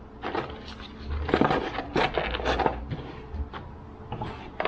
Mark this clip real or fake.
real